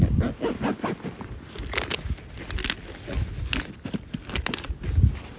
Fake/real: real